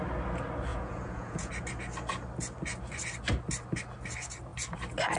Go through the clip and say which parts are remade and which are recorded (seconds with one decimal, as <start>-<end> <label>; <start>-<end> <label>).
0.0-0.7 recorded; 0.7-1.5 remade; 1.5-5.2 recorded